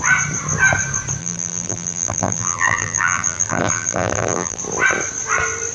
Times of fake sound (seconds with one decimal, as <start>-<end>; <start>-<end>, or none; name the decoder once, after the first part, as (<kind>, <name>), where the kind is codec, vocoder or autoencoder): 1.2-4.6 (vocoder, BigVGAN v2)